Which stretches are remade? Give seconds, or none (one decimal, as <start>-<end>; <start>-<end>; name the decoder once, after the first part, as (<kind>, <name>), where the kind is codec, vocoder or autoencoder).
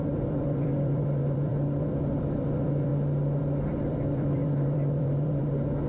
0.0-2.9 (vocoder, BigVGAN v2); 3.4-5.9